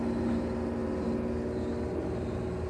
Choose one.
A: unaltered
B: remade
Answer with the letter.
A